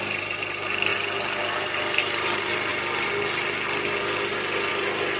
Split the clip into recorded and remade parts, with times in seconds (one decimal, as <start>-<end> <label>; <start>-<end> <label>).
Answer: 0.0-0.9 remade; 0.9-1.6 recorded; 1.6-2.7 remade; 2.7-4.7 recorded; 4.7-5.2 remade

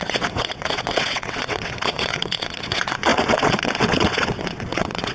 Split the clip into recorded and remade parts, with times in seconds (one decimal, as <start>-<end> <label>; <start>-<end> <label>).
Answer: 0.0-5.1 remade

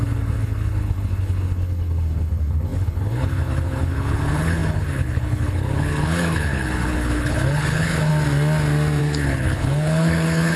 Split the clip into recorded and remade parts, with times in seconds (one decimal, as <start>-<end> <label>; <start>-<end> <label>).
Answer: 0.0-8.1 remade; 8.1-9.0 recorded; 9.0-10.6 remade

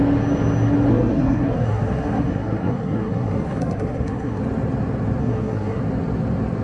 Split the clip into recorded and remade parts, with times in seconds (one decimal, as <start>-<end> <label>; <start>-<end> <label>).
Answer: 0.0-0.9 recorded; 0.9-4.4 remade; 4.4-5.2 recorded; 5.2-5.8 remade; 5.8-6.6 recorded

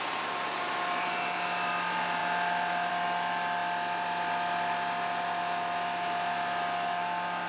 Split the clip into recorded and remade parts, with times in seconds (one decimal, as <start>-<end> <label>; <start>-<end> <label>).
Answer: 0.0-7.5 recorded

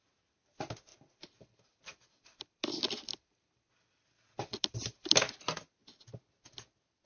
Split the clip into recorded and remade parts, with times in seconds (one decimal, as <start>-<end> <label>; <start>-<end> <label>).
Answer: 0.0-0.9 recorded; 0.9-5.2 remade; 5.2-7.1 recorded